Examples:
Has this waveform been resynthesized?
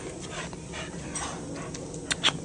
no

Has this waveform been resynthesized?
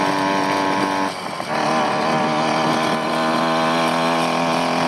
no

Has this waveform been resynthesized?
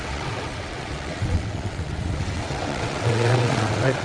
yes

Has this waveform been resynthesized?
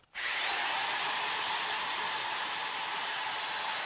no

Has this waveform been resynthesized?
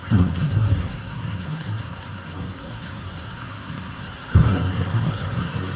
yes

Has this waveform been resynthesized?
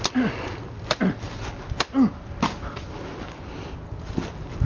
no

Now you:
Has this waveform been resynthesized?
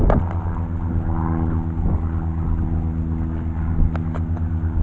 no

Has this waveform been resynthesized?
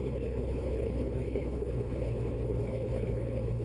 yes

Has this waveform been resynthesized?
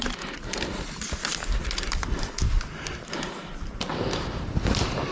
no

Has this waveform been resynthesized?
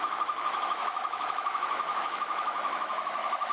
yes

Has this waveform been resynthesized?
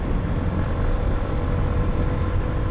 no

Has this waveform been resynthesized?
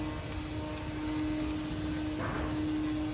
no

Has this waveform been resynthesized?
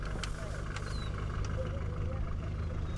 no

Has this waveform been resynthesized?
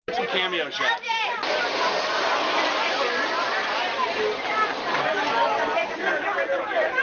no